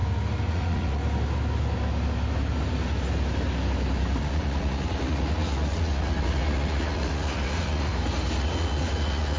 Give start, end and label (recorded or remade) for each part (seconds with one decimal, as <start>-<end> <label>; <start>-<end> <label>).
0.0-0.5 recorded; 0.5-1.0 remade; 1.0-4.2 recorded; 4.2-7.9 remade; 7.9-8.4 recorded; 8.4-9.4 remade